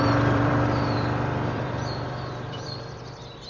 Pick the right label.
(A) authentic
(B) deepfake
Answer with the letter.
B